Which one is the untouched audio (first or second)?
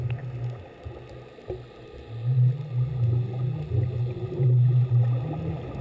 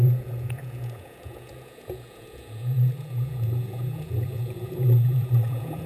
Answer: first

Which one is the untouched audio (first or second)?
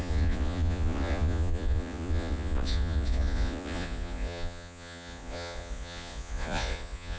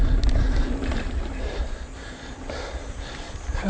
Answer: second